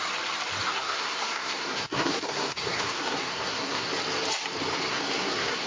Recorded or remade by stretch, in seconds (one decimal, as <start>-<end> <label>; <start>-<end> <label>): 0.0-0.7 recorded; 0.7-3.9 remade; 3.9-4.9 recorded; 4.9-5.7 remade